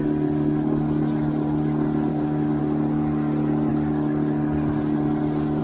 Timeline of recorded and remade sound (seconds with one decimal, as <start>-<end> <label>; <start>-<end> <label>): 0.0-2.1 recorded; 2.1-2.6 remade; 2.6-5.6 recorded